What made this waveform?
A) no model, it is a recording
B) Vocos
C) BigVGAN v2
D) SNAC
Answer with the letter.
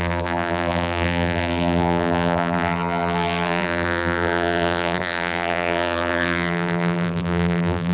C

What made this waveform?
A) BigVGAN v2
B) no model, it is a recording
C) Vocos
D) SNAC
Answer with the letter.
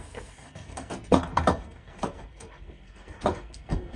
D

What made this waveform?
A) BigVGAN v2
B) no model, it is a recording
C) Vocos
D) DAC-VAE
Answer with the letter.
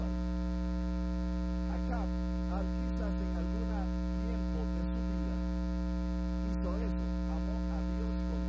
B